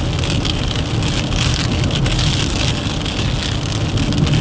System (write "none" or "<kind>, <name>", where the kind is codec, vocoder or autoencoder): none